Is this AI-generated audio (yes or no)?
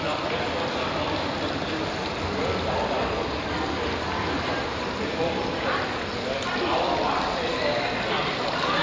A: no